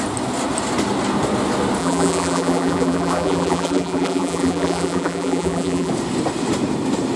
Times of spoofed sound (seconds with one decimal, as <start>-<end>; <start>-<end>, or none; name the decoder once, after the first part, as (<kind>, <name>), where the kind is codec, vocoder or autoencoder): 1.8-5.9 (vocoder, BigVGAN v2)